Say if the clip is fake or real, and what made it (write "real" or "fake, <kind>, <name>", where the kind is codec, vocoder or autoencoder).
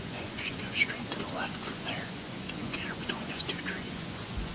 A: fake, vocoder, Vocos